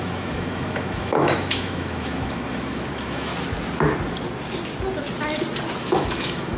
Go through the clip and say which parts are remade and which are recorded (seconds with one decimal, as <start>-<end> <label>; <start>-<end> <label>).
0.0-3.3 remade; 3.3-5.8 recorded; 5.8-6.6 remade